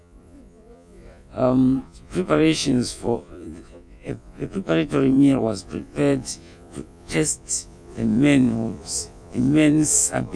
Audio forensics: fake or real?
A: fake